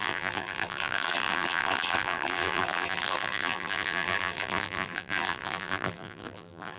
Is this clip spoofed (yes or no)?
yes